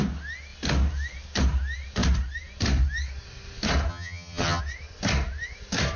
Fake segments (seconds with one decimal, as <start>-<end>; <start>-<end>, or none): 3.9-4.6